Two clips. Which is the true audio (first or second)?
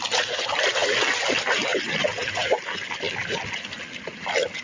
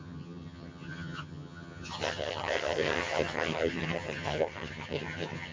first